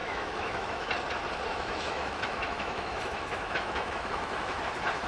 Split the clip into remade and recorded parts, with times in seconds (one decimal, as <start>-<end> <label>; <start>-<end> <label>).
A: 0.0-0.9 remade; 0.9-1.5 recorded; 1.5-4.6 remade; 4.6-5.1 recorded